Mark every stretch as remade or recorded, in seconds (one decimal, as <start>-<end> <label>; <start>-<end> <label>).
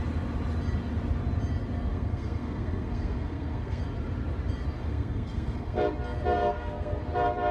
0.0-1.9 recorded; 1.9-3.8 remade; 3.8-4.7 recorded; 4.7-5.8 remade; 5.8-6.3 recorded; 6.3-7.0 remade; 7.0-7.5 recorded